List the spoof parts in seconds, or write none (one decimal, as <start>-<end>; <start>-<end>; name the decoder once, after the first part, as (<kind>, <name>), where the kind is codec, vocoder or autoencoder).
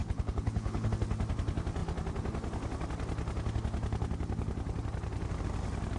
0.0-0.9 (codec, HILCodec)